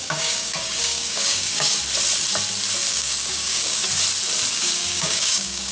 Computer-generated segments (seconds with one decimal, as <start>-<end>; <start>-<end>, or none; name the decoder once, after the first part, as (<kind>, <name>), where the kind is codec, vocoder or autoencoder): 0.0-1.7 (codec, DAC); 2.9-3.8; 4.5-5.7